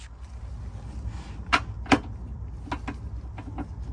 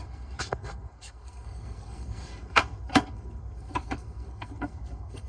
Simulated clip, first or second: second